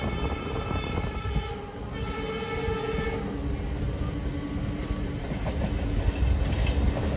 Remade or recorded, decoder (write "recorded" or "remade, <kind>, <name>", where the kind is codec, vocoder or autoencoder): recorded